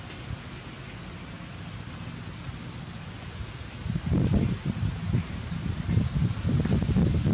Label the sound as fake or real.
real